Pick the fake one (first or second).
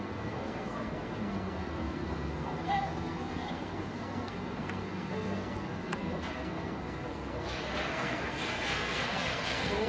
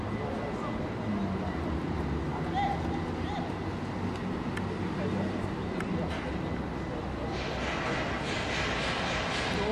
first